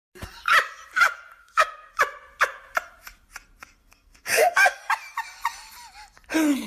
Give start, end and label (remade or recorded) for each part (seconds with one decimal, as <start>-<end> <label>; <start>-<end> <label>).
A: 0.0-1.4 recorded; 1.4-1.9 remade; 1.9-3.8 recorded; 3.8-4.8 remade; 4.8-6.7 recorded